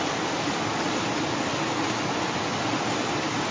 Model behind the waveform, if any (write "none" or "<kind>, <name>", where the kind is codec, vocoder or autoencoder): none